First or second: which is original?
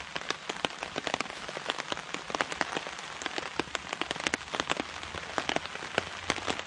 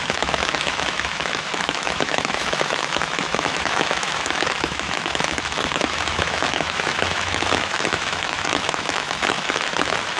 first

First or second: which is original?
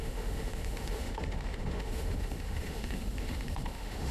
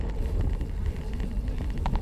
second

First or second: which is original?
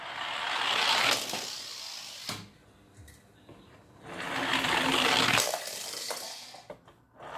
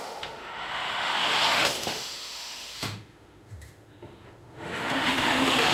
first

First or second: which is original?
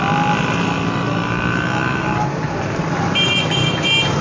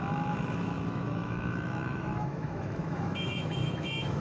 first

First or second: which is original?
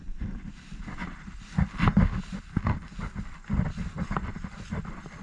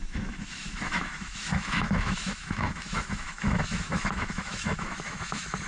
first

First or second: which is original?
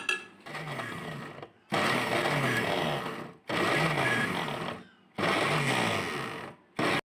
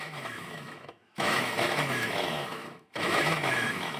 first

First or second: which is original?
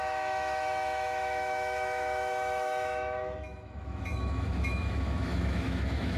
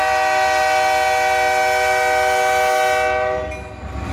second